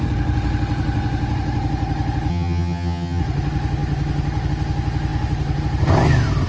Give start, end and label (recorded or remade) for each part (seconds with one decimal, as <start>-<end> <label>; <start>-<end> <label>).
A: 0.0-2.3 recorded; 2.3-3.2 remade; 3.2-6.5 recorded